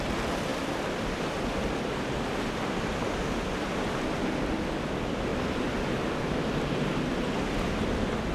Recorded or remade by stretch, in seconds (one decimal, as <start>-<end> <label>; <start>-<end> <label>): 0.0-8.3 recorded